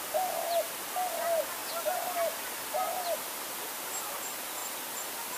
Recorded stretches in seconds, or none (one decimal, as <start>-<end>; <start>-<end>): 0.0-5.4